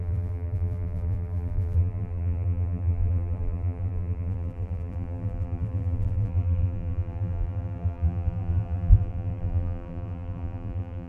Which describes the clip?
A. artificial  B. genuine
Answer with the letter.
A